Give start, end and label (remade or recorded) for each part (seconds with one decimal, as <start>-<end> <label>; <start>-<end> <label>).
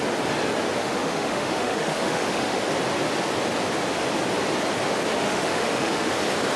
0.0-0.8 recorded; 0.8-2.6 remade; 2.6-5.1 recorded; 5.1-6.1 remade; 6.1-6.6 recorded